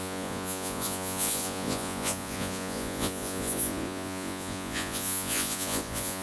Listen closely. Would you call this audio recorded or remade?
remade